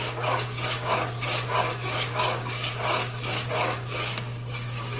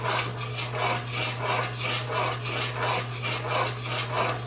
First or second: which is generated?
first